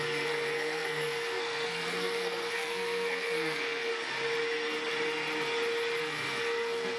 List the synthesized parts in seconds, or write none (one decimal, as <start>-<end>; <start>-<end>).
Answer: 0.0-3.9; 6.0-7.0